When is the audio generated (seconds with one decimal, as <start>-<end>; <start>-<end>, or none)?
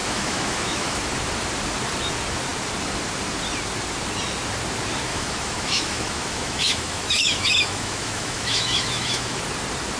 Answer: 0.0-1.0; 5.1-9.4